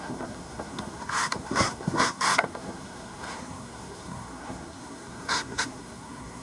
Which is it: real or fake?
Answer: fake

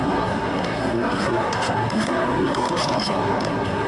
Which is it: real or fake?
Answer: fake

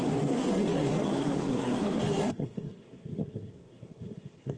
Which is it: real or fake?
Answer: fake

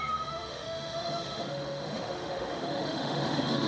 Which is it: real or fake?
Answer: fake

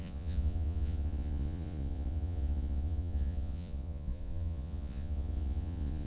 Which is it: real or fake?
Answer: fake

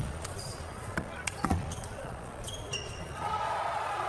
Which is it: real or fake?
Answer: fake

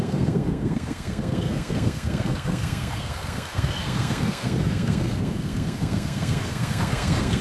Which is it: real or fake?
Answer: fake